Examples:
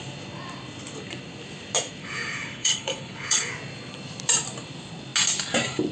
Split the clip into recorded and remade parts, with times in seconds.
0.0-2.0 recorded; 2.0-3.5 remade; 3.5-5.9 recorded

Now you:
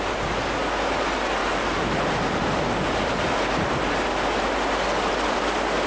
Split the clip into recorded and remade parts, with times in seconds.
0.0-5.9 recorded